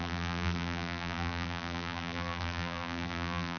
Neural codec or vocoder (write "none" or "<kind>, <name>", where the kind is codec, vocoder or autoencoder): vocoder, BigVGAN v2